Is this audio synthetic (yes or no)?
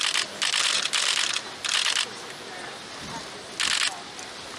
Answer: no